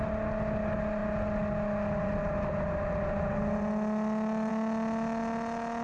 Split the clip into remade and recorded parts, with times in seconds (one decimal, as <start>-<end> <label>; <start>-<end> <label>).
0.0-5.8 recorded